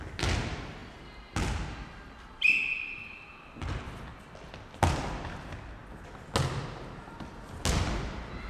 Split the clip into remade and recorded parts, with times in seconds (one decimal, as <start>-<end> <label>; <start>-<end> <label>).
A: 0.0-8.5 recorded